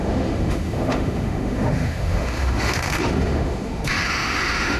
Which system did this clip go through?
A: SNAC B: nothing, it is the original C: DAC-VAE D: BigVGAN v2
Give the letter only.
C